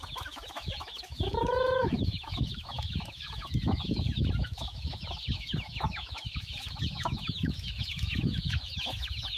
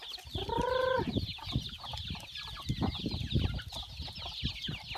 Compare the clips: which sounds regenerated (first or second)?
first